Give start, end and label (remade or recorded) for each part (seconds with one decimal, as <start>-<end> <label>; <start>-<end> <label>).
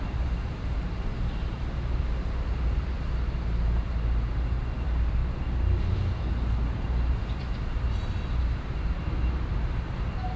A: 0.0-5.2 remade; 5.2-6.7 recorded; 6.7-10.4 remade